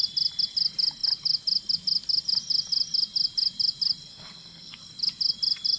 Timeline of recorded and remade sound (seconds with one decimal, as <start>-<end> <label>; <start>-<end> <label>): 0.0-4.1 recorded; 4.1-4.8 remade; 4.8-5.8 recorded